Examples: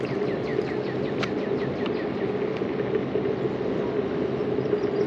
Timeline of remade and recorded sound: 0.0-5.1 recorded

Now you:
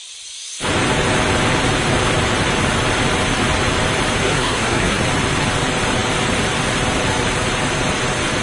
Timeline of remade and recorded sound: 0.0-4.2 recorded; 4.2-5.0 remade; 5.0-8.4 recorded

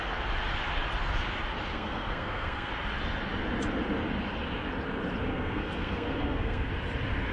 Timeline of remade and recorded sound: 0.0-1.7 recorded; 1.7-2.7 remade; 2.7-5.3 recorded; 5.3-6.7 remade; 6.7-7.3 recorded

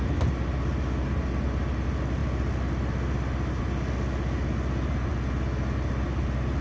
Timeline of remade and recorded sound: 0.0-6.6 recorded

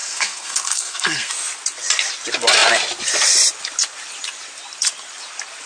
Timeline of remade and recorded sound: 0.0-1.3 remade; 1.3-5.7 recorded